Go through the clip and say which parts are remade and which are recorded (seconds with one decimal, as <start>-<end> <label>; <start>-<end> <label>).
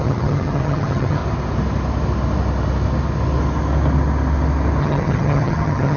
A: 0.0-1.2 remade; 1.2-4.8 recorded; 4.8-6.0 remade